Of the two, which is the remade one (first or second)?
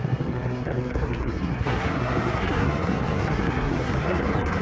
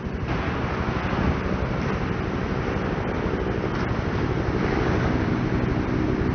first